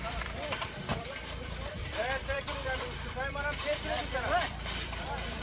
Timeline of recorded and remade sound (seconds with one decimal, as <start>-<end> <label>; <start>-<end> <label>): 0.0-5.4 remade